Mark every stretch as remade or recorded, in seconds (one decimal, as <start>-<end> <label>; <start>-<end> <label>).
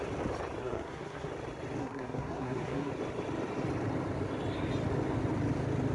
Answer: 0.0-0.6 recorded; 0.6-1.3 remade; 1.3-1.8 recorded; 1.8-2.9 remade; 2.9-5.9 recorded